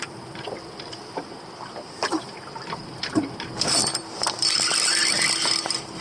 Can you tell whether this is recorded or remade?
remade